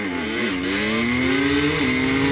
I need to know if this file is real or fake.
real